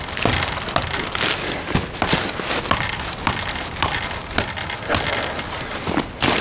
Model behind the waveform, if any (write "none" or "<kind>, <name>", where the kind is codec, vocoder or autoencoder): none